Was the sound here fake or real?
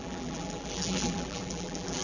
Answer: fake